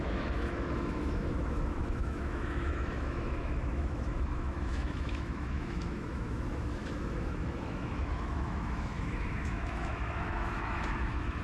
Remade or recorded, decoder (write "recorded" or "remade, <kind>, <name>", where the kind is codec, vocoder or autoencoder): remade, autoencoder, DAC-VAE